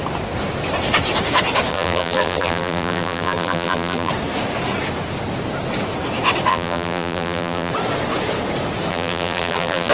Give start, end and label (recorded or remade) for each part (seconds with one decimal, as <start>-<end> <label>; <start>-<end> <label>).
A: 0.0-1.7 recorded; 1.7-4.1 remade; 4.1-6.5 recorded; 6.5-7.7 remade; 7.7-8.9 recorded; 8.9-9.9 remade